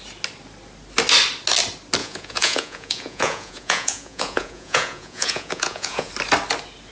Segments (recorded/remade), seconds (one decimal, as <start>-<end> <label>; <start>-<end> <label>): 0.0-2.0 recorded; 2.0-6.1 remade; 6.1-6.9 recorded